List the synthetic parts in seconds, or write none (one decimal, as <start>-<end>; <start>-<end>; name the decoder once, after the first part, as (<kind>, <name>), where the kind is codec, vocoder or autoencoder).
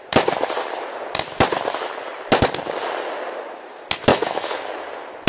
4.1-4.6 (autoencoder, DAC-VAE)